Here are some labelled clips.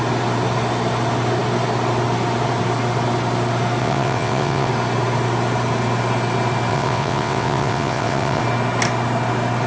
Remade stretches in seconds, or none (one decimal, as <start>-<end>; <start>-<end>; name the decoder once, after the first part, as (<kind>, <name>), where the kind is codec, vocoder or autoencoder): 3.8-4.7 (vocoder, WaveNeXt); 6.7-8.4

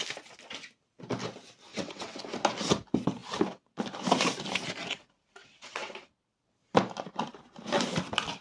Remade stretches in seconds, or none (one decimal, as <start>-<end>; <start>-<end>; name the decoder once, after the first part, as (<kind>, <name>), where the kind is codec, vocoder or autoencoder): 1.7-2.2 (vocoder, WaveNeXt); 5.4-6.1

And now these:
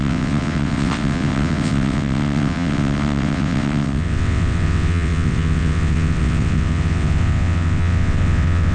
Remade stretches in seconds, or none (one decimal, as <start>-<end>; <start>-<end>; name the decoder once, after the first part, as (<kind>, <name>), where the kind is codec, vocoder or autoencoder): 0.0-8.7 (vocoder, WaveNeXt)

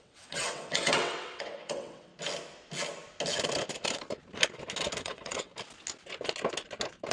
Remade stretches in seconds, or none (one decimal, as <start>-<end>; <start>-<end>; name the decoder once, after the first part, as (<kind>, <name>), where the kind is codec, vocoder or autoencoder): 0.0-2.1 (vocoder, WaveNeXt); 5.0-5.5

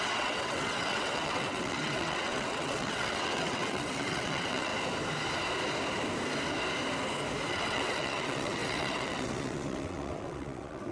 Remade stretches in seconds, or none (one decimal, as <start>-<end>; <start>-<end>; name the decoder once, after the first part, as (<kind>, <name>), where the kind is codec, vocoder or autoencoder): 0.0-4.7 (vocoder, WaveNeXt); 7.5-10.9